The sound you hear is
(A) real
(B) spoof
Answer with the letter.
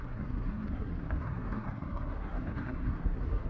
B